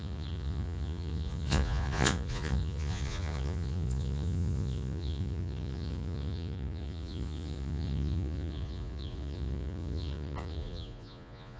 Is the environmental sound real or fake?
fake